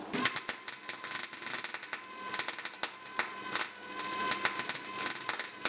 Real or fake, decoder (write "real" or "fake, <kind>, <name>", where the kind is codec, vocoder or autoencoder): real